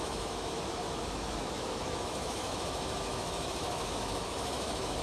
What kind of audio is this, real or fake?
fake